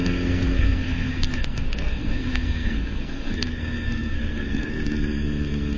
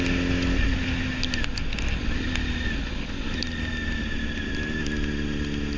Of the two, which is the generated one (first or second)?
first